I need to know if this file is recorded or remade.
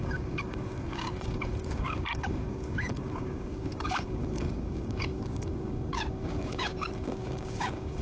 remade